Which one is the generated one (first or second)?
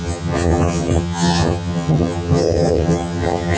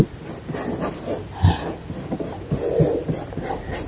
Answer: first